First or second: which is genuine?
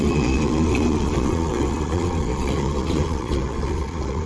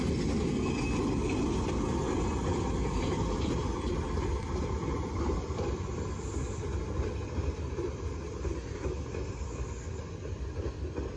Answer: second